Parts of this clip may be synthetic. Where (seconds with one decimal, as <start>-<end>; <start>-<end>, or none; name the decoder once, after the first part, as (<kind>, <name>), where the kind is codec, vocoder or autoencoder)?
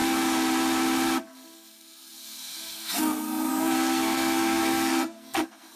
1.2-5.8 (codec, SNAC)